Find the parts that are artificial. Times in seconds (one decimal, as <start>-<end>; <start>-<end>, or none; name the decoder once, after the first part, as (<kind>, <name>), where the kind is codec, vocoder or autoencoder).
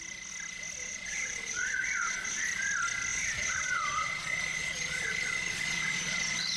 0.8-2.4 (vocoder, Vocos); 3.1-6.6